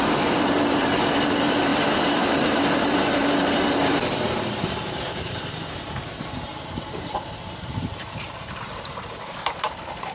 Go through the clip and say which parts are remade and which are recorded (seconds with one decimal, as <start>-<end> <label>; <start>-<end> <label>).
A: 0.0-10.1 remade

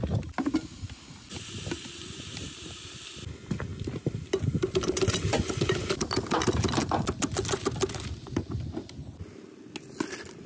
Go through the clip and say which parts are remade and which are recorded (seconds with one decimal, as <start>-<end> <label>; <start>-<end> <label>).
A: 0.0-2.3 recorded; 2.3-2.9 remade; 2.9-10.5 recorded